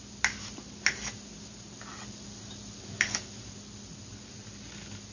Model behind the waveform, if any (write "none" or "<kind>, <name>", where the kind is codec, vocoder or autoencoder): none